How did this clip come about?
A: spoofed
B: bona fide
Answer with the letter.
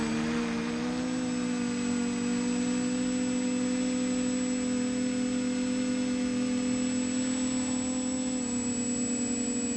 B